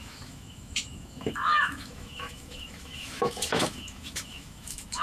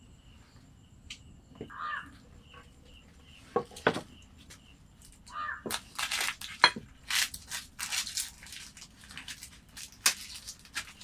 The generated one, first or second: first